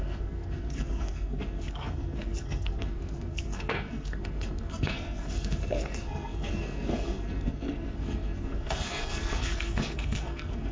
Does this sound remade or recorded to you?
remade